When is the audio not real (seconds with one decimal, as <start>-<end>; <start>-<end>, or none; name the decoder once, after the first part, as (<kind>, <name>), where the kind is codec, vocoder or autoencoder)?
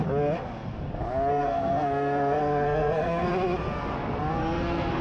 1.3-3.3 (codec, SNAC); 4.3-5.0